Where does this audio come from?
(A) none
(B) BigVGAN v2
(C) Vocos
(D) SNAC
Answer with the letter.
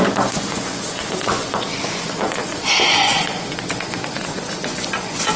C